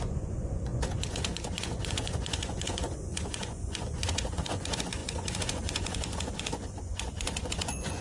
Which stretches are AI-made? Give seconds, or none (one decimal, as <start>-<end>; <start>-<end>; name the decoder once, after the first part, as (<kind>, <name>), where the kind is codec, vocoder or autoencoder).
0.0-8.0 (vocoder, Vocos)